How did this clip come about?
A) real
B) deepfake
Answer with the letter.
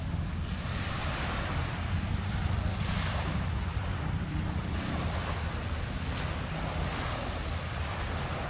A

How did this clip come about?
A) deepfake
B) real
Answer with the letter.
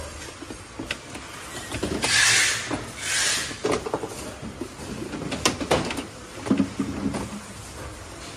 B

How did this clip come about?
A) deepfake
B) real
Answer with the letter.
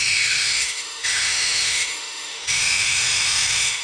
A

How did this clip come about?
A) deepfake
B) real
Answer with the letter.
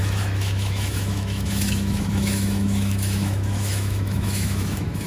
A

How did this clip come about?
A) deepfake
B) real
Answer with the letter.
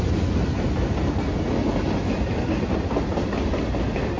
B